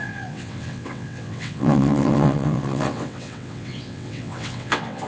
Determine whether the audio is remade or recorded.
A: remade